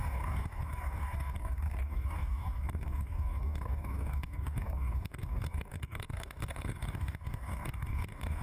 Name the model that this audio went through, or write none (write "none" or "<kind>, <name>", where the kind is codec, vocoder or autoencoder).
codec, DAC